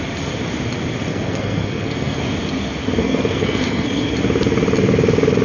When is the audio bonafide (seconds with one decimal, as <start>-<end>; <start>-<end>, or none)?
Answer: 0.0-1.1; 2.2-3.0; 4.1-5.4